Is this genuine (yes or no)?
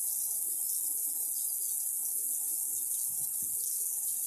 yes